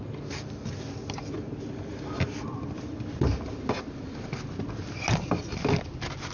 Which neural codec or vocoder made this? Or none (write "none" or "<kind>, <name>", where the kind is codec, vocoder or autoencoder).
none